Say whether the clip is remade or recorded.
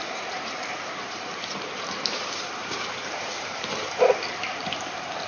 remade